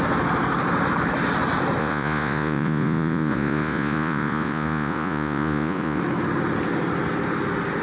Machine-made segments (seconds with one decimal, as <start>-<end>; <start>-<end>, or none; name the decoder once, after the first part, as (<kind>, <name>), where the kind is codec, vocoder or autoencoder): 1.8-6.0 (vocoder, Vocos)